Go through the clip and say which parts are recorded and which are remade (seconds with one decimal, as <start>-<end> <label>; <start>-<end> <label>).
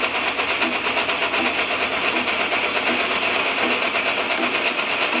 0.0-5.2 recorded